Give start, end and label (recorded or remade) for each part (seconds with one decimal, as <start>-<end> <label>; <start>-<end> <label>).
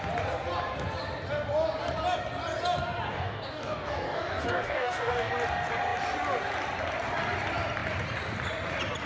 0.0-3.1 recorded; 3.1-5.3 remade; 5.3-9.1 recorded